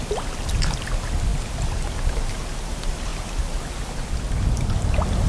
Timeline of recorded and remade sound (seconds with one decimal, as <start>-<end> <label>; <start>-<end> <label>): 0.0-5.3 recorded